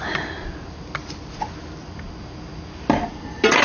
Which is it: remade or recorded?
recorded